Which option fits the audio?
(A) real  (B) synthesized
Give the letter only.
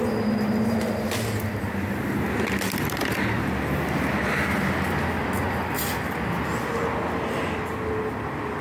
A